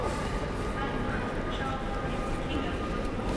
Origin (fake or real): real